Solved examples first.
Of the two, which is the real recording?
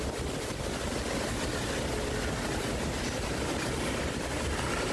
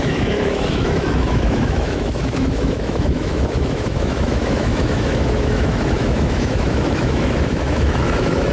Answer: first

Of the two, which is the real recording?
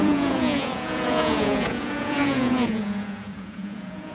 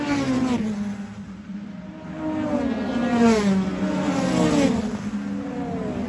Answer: second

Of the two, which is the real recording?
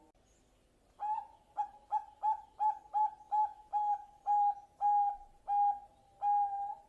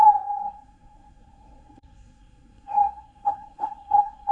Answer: first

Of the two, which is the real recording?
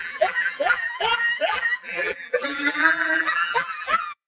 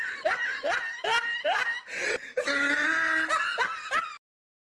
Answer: second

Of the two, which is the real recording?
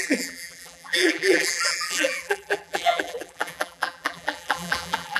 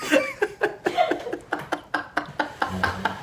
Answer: second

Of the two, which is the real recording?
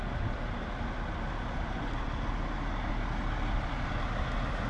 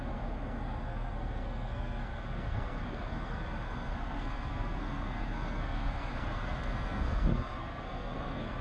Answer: first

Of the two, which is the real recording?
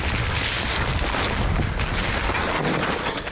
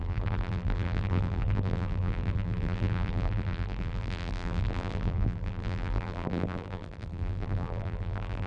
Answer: first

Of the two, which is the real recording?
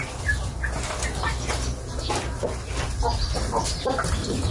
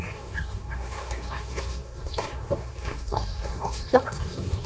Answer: first